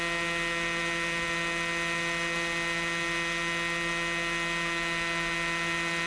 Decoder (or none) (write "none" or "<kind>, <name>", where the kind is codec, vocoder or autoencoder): none